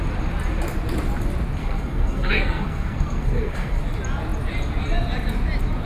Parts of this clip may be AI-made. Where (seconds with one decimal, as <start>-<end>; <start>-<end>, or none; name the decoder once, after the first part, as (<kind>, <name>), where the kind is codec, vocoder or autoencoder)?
1.6-3.8 (codec, SNAC)

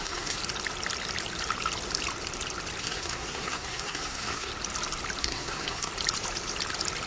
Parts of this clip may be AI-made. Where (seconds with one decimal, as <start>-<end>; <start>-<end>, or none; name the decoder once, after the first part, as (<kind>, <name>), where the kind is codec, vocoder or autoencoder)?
0.0-0.4 (codec, SNAC); 2.8-4.5; 5.2-5.9

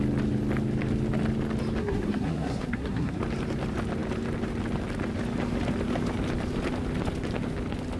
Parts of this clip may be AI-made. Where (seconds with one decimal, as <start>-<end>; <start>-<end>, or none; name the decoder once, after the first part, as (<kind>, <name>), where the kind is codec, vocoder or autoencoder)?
1.8-3.2 (codec, SNAC)

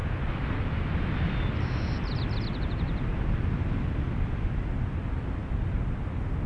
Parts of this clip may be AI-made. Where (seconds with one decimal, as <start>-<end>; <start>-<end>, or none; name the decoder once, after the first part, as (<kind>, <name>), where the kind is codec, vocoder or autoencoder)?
none

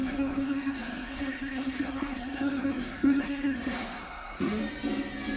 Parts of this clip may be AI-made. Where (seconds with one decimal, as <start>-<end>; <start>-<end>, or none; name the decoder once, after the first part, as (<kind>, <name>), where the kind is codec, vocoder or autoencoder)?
0.0-4.6 (codec, SNAC)

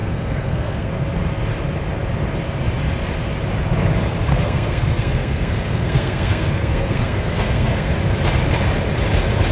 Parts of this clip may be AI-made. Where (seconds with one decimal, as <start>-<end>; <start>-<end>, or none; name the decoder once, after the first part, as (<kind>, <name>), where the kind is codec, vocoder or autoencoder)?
0.0-0.9 (codec, SNAC); 4.3-7.9

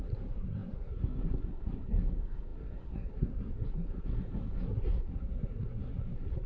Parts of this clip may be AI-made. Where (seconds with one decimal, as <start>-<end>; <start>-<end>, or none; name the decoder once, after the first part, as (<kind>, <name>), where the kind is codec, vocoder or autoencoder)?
0.0-6.5 (codec, SNAC)

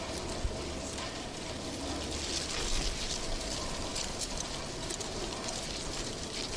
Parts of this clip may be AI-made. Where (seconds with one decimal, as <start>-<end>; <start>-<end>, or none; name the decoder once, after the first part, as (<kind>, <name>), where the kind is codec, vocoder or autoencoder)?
none